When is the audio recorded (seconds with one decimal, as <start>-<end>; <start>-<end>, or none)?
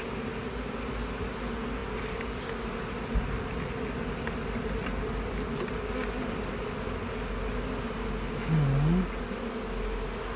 0.0-10.4